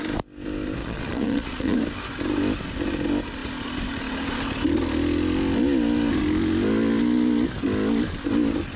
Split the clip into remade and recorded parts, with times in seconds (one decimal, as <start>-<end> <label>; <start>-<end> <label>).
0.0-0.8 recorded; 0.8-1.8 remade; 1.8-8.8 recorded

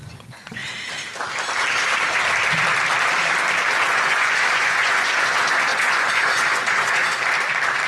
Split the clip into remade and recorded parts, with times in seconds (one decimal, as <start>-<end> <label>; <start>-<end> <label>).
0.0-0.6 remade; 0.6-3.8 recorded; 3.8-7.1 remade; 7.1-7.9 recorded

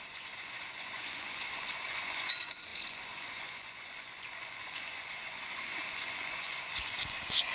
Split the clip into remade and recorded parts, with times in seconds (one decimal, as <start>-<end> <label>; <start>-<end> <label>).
0.0-7.5 remade